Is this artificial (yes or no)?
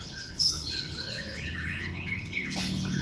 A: yes